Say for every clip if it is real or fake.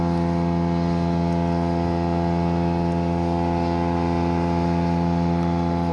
real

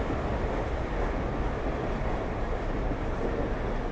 real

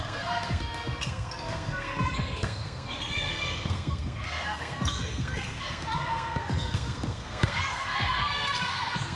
fake